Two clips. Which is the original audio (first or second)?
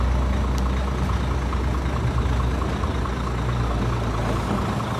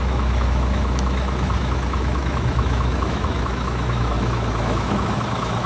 first